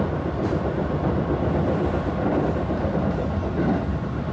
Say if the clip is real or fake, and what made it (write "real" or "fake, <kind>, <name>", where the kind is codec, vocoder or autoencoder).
real